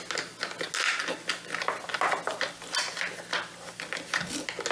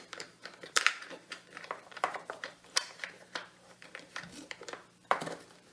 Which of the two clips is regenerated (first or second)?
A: second